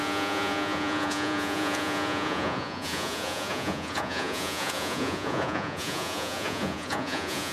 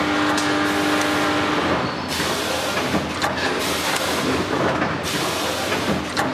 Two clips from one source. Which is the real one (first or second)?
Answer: second